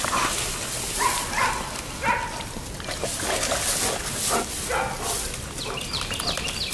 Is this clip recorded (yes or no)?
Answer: yes